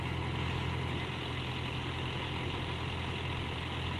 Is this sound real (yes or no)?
yes